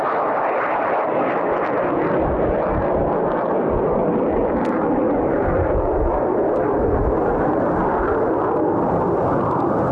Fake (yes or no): no